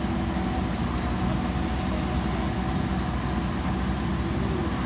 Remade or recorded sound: recorded